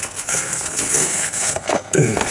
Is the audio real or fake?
fake